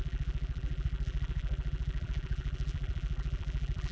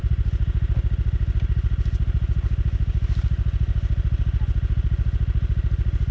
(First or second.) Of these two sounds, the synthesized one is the first